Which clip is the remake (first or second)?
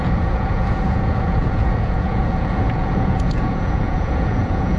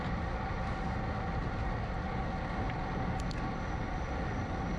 first